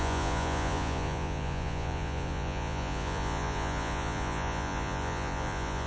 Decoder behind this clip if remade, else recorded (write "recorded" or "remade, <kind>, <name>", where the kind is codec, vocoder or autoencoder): remade, vocoder, Vocos